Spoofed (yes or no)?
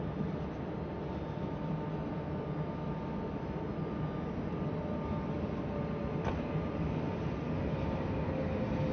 no